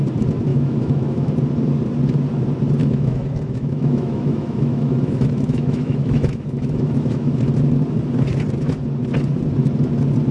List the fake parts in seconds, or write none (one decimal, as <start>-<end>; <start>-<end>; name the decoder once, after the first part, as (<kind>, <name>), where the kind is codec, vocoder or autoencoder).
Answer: 0.5-1.3 (autoencoder, DAC-VAE); 2.8-7.4